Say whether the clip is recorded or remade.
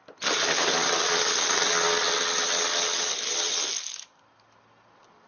recorded